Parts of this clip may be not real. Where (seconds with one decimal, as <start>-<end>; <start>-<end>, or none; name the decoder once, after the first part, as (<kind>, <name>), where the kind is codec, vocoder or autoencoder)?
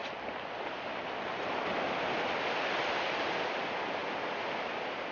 2.4-4.0 (vocoder, BigVGAN v2); 4.6-5.1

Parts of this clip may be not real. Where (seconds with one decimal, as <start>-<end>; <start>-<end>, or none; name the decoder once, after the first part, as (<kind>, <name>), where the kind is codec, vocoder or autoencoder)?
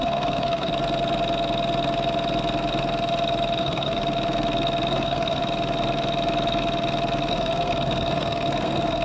0.0-0.7 (codec, SNAC); 3.6-4.0; 4.9-5.4; 7.3-9.0